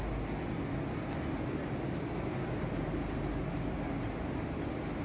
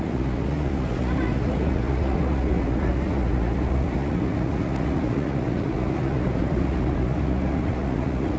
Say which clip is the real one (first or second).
first